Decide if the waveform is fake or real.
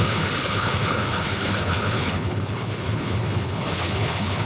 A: fake